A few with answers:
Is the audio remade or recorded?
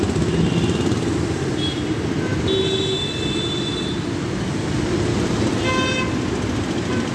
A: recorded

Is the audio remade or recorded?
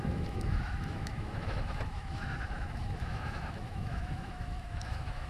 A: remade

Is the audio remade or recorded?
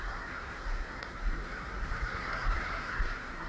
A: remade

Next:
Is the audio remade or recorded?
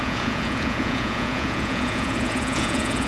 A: remade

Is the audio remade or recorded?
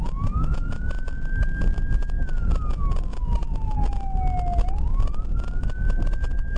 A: recorded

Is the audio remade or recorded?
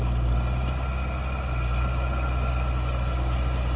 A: recorded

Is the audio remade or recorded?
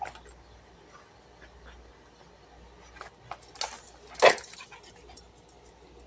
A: recorded